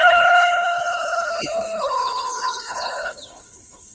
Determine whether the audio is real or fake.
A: fake